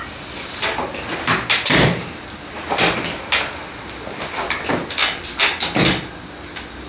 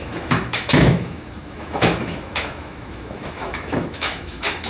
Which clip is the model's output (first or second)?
second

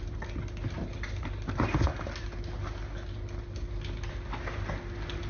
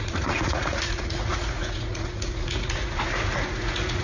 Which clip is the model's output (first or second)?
second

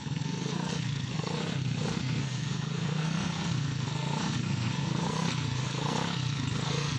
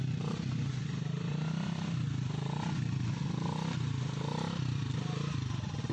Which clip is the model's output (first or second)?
first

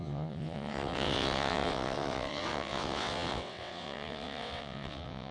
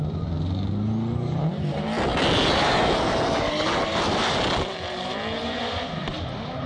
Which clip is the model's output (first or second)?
first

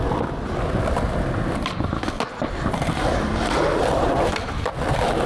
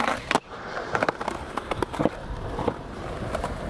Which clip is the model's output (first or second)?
second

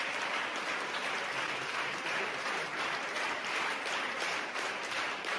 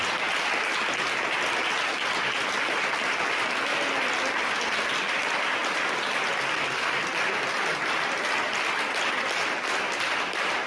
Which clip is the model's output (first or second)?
first